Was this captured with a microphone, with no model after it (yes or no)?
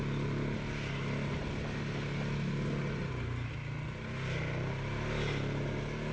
yes